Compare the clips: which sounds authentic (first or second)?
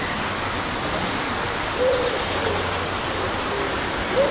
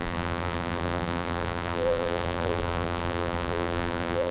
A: first